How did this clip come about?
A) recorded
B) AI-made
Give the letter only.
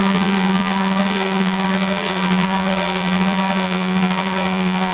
B